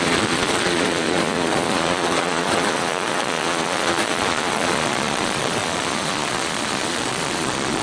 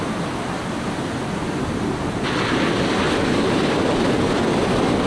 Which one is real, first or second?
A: second